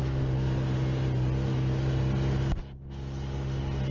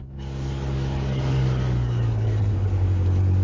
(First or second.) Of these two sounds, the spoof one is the second